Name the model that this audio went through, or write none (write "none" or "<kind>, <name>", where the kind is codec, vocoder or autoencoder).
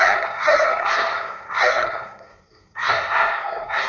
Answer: codec, SNAC